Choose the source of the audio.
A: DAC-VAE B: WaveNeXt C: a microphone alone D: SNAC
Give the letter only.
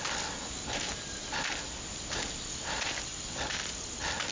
C